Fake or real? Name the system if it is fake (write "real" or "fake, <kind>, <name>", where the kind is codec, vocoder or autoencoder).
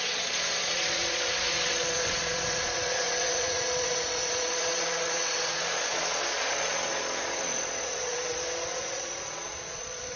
fake, vocoder, Vocos